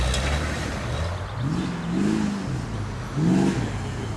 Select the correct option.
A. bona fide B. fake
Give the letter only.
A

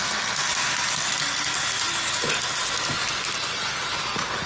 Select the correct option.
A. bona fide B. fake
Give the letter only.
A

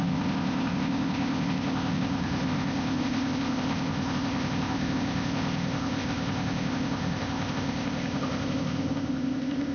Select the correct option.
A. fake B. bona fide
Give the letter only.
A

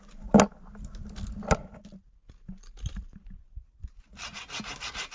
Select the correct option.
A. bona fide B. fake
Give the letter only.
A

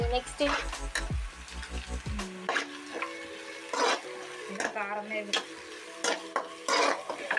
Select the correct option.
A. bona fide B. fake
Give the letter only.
A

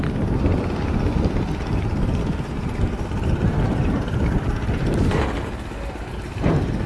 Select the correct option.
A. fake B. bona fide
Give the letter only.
B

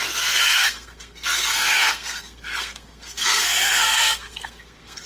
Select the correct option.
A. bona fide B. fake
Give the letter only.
B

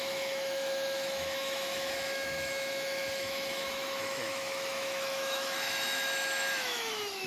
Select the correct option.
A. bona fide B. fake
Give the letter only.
B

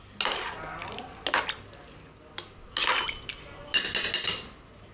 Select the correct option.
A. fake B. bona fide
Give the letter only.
B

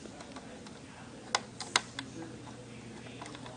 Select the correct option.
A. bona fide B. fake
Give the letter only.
A